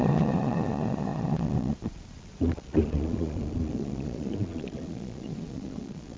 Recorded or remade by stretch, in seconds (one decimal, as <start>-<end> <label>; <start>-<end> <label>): 0.0-6.2 remade